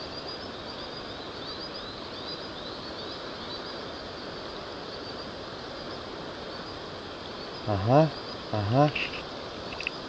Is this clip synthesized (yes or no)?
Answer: no